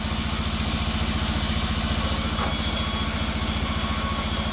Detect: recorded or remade recorded